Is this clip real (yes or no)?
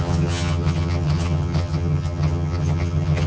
no